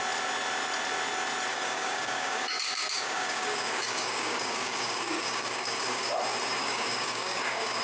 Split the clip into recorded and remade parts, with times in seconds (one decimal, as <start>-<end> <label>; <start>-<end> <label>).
0.0-1.5 recorded; 1.5-6.1 remade; 6.1-6.6 recorded; 6.6-7.8 remade